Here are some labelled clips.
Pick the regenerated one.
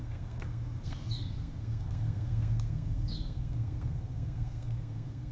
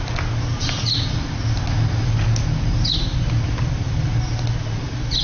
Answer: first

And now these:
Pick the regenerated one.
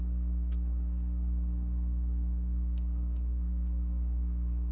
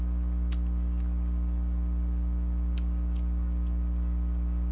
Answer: first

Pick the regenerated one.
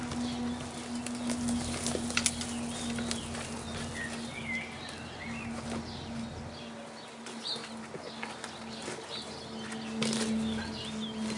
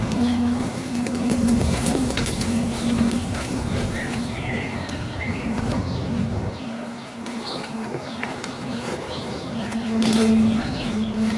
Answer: second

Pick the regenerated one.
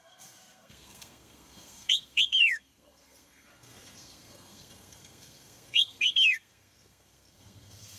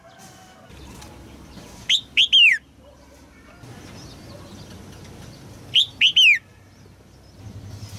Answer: first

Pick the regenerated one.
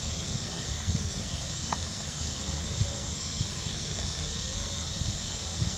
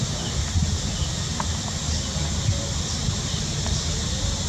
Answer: first